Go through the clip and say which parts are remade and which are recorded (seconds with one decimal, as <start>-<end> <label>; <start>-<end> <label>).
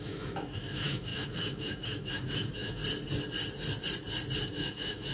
0.0-2.8 remade; 2.8-4.5 recorded; 4.5-5.1 remade